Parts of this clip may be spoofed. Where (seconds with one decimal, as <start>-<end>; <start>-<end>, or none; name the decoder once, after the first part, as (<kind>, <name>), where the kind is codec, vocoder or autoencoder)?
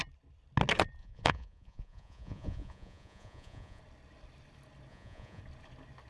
1.0-3.8 (vocoder, Vocos); 4.9-5.4